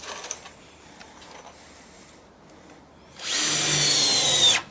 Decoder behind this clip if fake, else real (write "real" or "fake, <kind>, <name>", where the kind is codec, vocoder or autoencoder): real